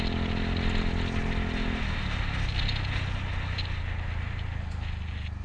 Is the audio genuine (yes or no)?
yes